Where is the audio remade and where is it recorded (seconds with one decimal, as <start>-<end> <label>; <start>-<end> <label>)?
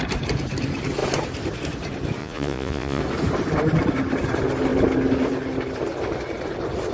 0.0-2.2 recorded; 2.2-3.0 remade; 3.0-6.9 recorded